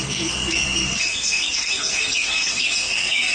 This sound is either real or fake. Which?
fake